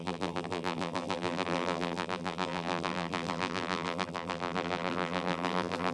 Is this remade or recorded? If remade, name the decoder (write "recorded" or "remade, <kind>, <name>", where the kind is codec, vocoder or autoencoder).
remade, vocoder, BigVGAN v2